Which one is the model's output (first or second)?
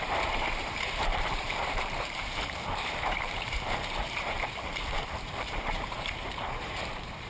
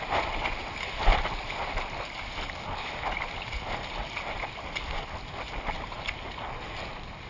first